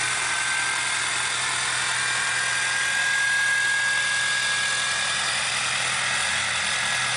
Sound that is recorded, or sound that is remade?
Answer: recorded